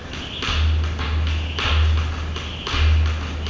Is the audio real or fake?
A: real